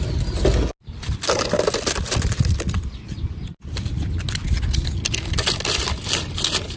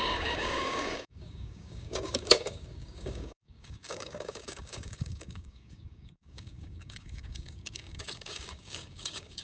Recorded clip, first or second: first